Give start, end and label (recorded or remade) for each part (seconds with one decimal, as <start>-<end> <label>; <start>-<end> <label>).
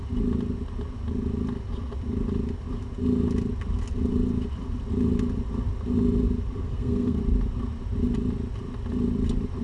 0.0-6.6 recorded; 6.6-7.2 remade; 7.2-9.6 recorded